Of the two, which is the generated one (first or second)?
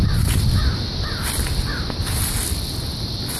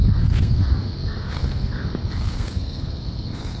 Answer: second